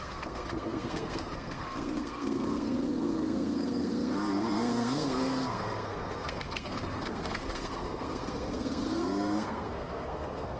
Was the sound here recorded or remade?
remade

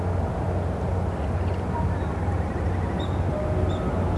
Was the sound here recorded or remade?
recorded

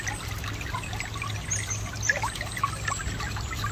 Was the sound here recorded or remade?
recorded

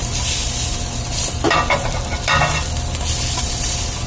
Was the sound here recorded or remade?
recorded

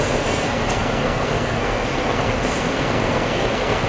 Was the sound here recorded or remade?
remade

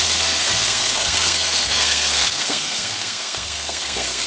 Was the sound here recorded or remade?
remade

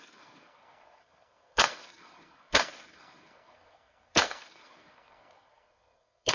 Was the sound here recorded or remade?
remade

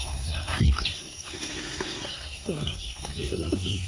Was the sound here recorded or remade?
remade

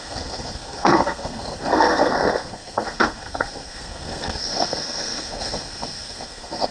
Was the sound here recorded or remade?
remade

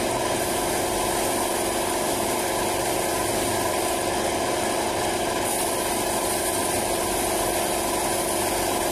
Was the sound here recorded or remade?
recorded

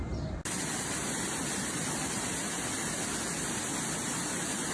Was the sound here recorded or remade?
recorded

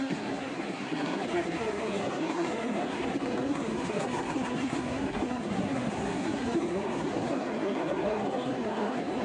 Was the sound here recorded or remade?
remade